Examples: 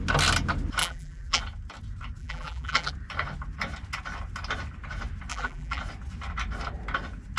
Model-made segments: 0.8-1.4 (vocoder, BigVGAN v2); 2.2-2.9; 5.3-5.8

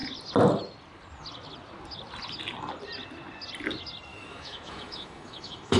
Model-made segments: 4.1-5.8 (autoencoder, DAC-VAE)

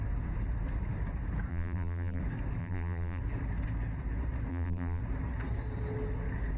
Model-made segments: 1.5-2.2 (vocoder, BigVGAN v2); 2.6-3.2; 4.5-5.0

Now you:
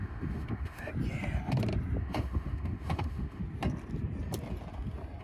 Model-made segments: 0.0-0.9 (autoencoder, DAC-VAE); 2.0-3.4

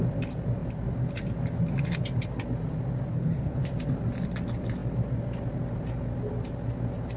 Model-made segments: 3.1-3.6 (codec, HILCodec)

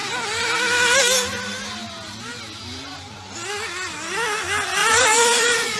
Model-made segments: 4.8-5.8 (vocoder, Vocos)

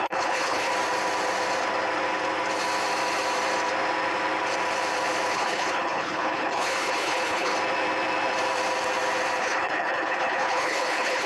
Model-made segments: 0.0-0.7 (codec, HILCodec); 5.3-7.5; 9.4-11.3

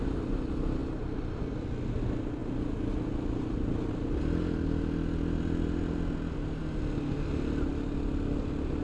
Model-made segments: none